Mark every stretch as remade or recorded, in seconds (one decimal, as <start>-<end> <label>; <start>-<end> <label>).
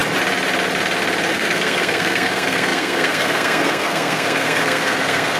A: 0.0-1.3 recorded; 1.3-5.4 remade